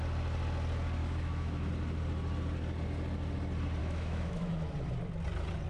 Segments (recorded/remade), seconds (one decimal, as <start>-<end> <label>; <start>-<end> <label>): 0.0-1.0 recorded; 1.0-1.7 remade; 1.7-3.8 recorded; 3.8-4.7 remade; 4.7-5.7 recorded